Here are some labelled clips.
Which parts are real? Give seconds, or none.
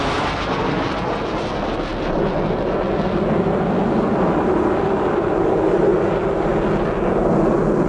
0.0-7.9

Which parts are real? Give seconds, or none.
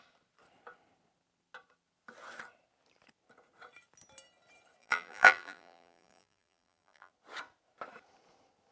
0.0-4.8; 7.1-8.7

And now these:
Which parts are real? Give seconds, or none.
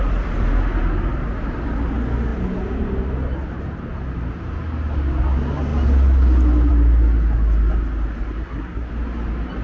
0.0-8.4; 8.9-9.6